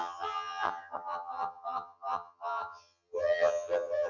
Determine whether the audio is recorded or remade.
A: remade